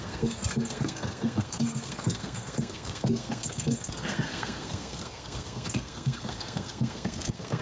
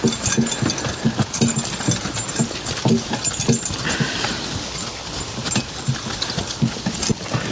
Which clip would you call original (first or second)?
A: second